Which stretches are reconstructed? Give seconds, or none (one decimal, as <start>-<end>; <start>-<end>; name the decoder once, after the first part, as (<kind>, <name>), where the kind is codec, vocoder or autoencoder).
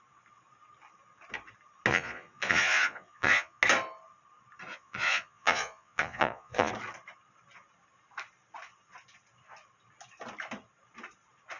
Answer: 1.9-3.6 (vocoder, Vocos); 4.7-6.7